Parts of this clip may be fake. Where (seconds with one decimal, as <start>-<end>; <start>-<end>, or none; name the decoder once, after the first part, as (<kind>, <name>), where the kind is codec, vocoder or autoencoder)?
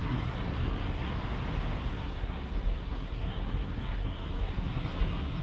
0.0-1.1 (codec, SNAC); 1.9-5.4